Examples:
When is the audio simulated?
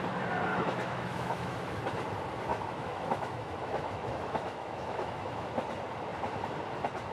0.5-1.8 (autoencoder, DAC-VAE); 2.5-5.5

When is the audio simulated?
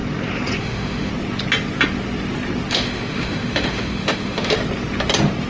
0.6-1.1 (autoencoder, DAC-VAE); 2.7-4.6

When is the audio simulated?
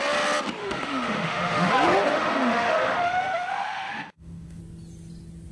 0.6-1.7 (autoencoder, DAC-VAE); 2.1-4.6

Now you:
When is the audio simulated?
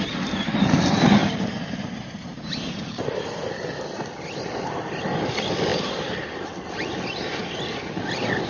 none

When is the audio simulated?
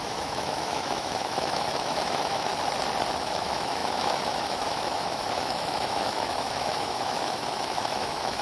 0.0-2.5 (autoencoder, DAC-VAE); 3.2-8.4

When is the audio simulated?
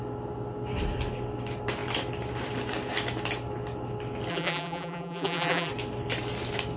4.3-5.7 (vocoder, BigVGAN v2)